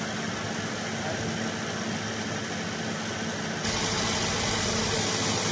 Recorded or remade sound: recorded